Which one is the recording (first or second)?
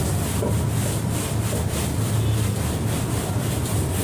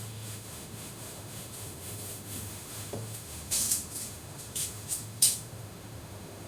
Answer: first